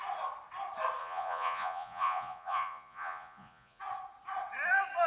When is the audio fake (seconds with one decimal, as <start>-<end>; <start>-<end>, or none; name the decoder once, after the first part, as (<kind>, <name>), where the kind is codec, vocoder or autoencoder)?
1.0-3.8 (vocoder, Vocos)